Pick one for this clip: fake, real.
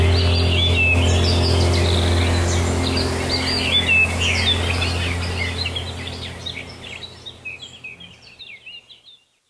real